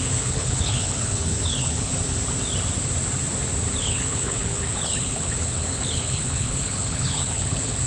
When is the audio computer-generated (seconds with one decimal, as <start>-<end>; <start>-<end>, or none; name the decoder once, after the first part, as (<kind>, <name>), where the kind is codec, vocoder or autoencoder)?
0.0-1.9 (codec, HILCodec); 3.8-7.9